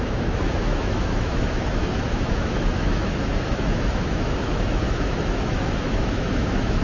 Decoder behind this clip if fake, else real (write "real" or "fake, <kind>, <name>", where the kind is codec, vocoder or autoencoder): fake, autoencoder, DAC-VAE